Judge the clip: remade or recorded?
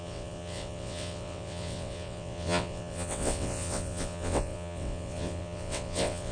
remade